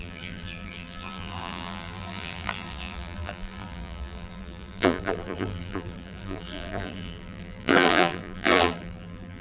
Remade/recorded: remade